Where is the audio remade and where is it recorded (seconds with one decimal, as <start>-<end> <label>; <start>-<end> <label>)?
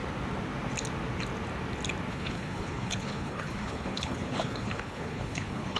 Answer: 0.0-2.1 recorded; 2.1-5.8 remade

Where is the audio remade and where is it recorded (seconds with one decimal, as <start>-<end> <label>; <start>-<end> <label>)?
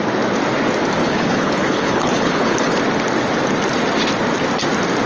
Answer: 0.0-1.0 recorded; 1.0-2.8 remade; 2.8-5.1 recorded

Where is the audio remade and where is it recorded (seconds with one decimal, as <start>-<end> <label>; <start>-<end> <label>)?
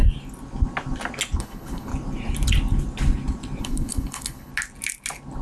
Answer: 0.0-1.4 recorded; 1.4-1.9 remade; 1.9-3.6 recorded; 3.6-4.5 remade; 4.5-5.4 recorded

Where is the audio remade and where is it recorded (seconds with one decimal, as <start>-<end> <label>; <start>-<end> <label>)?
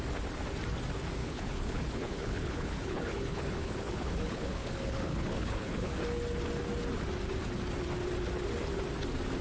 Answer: 0.0-1.2 recorded; 1.2-5.9 remade; 5.9-9.4 recorded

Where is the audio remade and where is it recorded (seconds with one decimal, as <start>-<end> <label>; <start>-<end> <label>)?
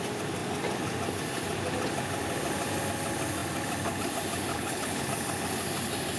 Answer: 0.0-4.5 recorded; 4.5-5.1 remade; 5.1-6.2 recorded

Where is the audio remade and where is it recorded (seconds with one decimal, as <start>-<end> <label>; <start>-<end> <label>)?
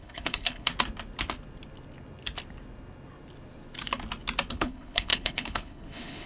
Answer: 0.0-0.7 remade; 0.7-4.5 recorded; 4.5-6.3 remade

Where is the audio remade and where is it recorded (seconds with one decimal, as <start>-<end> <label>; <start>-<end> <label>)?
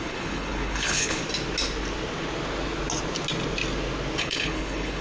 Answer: 0.0-1.2 remade; 1.2-4.2 recorded; 4.2-5.0 remade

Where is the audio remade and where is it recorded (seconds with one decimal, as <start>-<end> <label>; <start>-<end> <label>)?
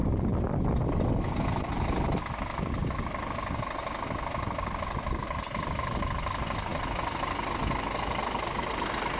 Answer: 0.0-9.2 recorded